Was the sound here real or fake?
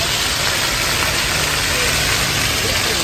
real